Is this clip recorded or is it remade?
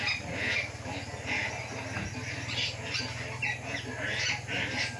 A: recorded